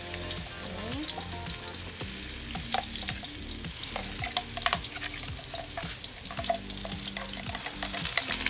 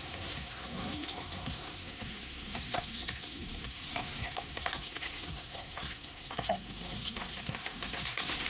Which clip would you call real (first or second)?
first